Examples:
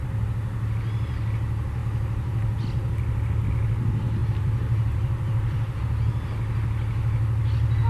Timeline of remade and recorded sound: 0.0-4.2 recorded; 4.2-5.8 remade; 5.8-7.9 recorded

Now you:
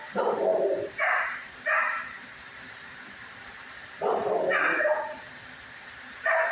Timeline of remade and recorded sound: 0.0-6.5 remade

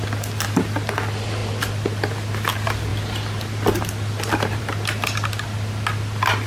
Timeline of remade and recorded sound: 0.0-2.9 recorded; 2.9-4.6 remade; 4.6-6.5 recorded